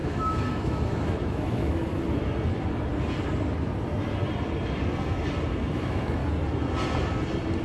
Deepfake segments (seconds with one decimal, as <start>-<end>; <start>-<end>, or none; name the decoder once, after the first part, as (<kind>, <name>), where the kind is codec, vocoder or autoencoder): 0.0-1.9 (autoencoder, DAC-VAE); 5.7-6.2